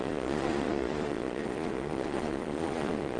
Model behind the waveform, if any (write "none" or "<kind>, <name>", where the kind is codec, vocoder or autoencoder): vocoder, Vocos